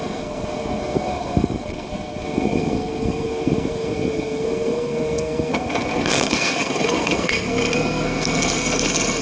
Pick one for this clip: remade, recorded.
remade